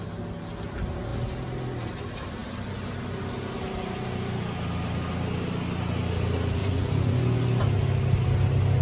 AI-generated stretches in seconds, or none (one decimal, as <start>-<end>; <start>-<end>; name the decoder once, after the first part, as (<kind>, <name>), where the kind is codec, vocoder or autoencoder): 6.6-7.6 (vocoder, Vocos)